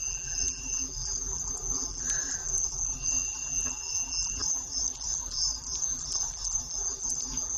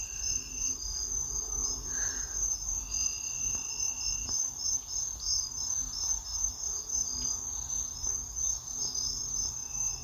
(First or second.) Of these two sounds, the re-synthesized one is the first